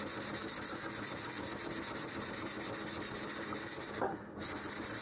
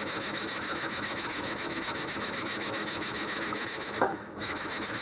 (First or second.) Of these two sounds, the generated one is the second